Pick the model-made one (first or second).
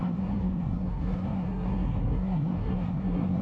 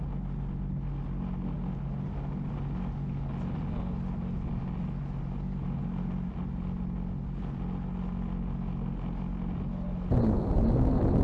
first